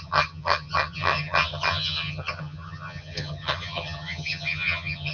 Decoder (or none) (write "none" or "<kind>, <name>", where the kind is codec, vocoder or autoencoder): vocoder, HiFi-GAN